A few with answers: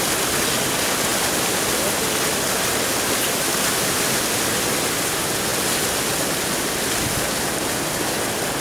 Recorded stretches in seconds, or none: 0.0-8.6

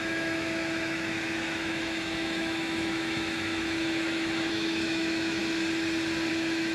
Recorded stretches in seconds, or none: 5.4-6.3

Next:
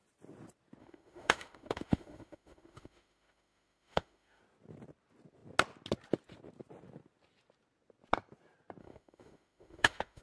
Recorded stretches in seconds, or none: 0.0-0.8; 4.4-8.8

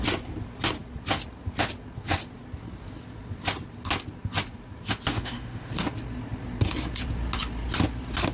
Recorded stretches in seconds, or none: 0.0-5.1; 5.7-8.3

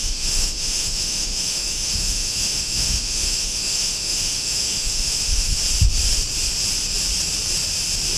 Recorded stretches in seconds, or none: 5.6-8.2

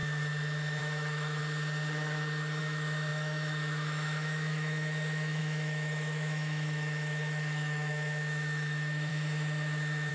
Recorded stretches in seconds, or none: 0.0-0.8; 1.4-2.6; 9.1-10.1

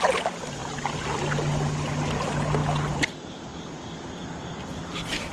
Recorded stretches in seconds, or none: 0.0-5.3

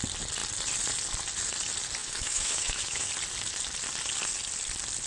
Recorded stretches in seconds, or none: 0.0-2.0; 3.1-5.1